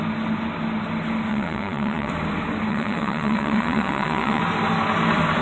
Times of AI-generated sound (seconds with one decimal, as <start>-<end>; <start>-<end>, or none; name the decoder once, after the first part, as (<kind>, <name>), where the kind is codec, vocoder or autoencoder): 1.3-2.1 (vocoder, WaveNeXt); 2.7-4.4